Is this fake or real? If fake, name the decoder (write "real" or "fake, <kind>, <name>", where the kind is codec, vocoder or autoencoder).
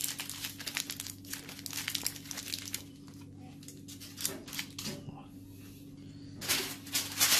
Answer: real